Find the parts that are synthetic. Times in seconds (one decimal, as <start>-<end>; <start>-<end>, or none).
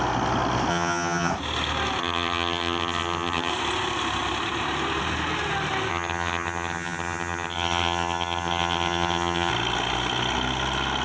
0.7-1.3; 2.0-3.5; 5.9-9.5